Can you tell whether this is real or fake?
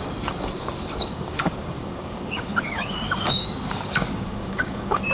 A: fake